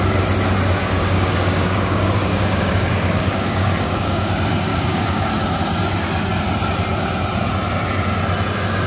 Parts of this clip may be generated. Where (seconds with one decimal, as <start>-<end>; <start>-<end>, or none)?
0.8-4.3; 4.7-5.3